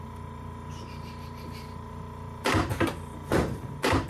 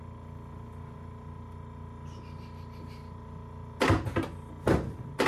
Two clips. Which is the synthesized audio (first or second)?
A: first